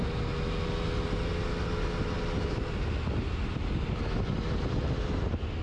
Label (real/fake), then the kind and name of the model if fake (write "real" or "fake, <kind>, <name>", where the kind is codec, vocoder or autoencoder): real